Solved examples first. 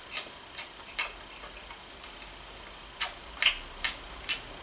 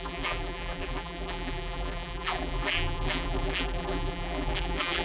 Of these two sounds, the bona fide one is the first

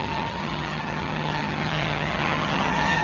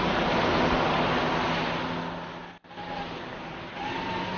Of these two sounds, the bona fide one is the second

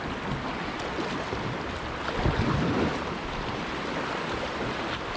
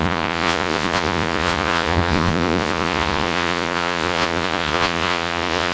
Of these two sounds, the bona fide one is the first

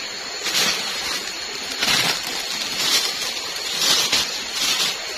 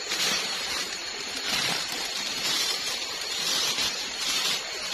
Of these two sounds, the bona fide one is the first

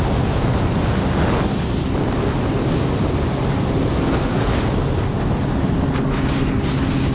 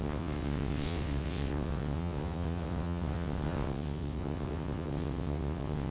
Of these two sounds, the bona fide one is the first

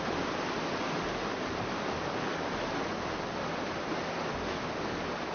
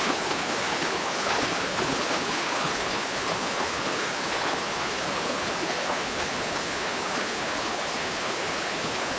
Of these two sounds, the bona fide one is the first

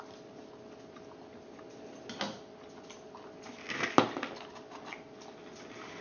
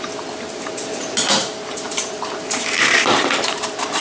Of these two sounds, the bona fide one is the first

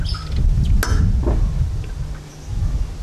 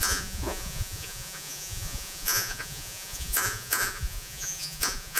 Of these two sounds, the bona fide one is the first